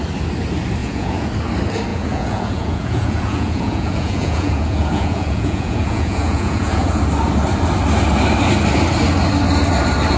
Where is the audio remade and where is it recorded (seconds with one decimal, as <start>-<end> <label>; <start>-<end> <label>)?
0.0-0.8 recorded; 0.8-1.3 remade; 1.3-1.9 recorded; 1.9-7.0 remade; 7.0-10.2 recorded